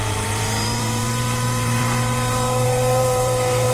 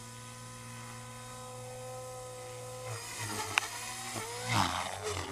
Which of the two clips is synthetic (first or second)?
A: first